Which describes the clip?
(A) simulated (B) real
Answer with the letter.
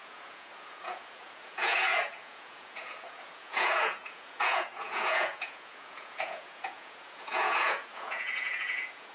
A